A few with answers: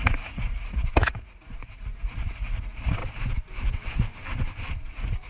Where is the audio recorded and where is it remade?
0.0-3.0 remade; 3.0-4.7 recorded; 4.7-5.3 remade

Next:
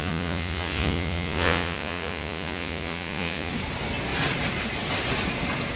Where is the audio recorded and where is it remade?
0.0-3.5 remade; 3.5-5.8 recorded

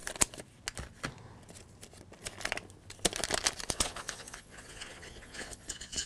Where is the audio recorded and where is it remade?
0.0-3.7 recorded; 3.7-6.1 remade

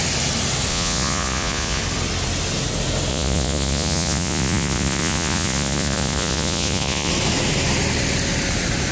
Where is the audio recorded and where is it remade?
0.0-0.7 recorded; 0.7-1.8 remade; 1.8-3.1 recorded; 3.1-7.1 remade; 7.1-8.9 recorded

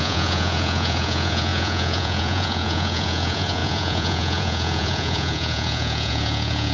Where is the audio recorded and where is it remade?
0.0-6.7 remade

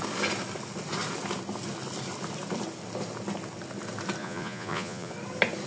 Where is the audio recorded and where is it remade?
0.0-4.2 recorded; 4.2-5.1 remade; 5.1-5.7 recorded

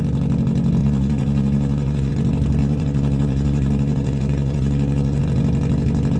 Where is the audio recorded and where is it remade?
0.0-0.8 recorded; 0.8-2.1 remade; 2.1-2.6 recorded; 2.6-5.2 remade; 5.2-6.2 recorded